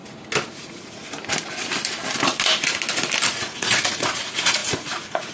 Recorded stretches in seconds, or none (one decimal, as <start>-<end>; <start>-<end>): 0.0-0.5; 1.0-3.3